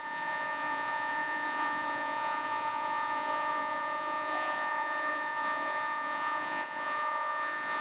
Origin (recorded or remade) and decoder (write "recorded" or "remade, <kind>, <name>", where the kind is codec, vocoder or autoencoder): remade, vocoder, Vocos